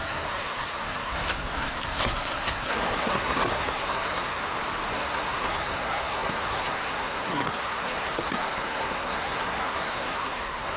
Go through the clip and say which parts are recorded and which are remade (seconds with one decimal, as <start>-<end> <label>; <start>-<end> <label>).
0.0-4.4 remade; 4.4-4.9 recorded; 4.9-10.8 remade